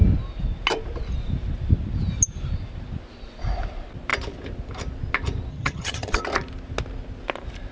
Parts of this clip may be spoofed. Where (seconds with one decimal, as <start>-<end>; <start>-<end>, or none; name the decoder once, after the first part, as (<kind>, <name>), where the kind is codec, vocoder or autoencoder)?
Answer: 5.5-6.2 (vocoder, HiFi-GAN)